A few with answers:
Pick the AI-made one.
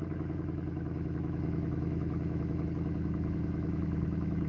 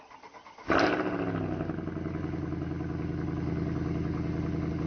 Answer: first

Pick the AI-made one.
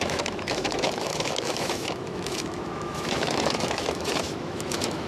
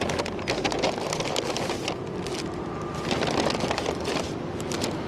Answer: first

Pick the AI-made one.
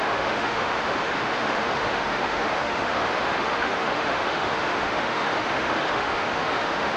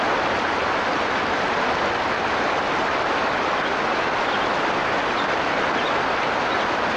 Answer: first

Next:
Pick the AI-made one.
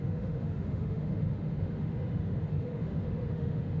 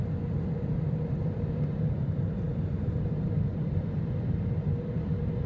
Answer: first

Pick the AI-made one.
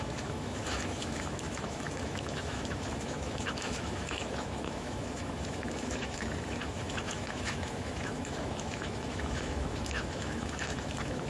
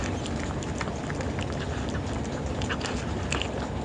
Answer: first